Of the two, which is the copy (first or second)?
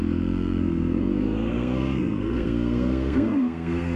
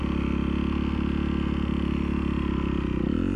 first